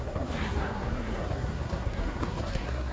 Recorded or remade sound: remade